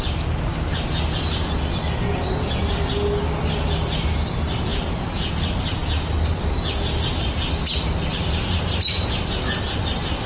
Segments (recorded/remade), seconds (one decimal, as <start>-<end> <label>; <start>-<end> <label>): 0.0-4.7 recorded; 4.7-5.3 remade; 5.3-10.3 recorded